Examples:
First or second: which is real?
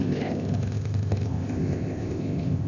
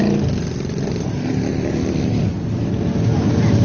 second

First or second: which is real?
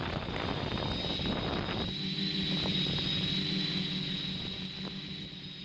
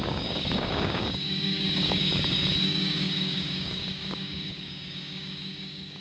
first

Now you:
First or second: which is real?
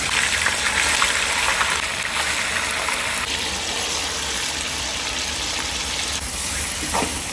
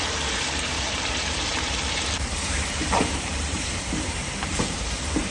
first